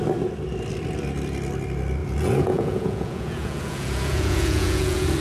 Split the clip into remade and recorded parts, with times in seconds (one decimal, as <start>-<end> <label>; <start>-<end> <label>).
0.0-2.0 recorded; 2.0-5.2 remade